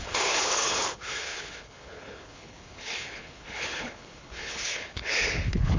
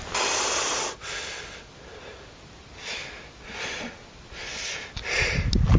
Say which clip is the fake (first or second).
first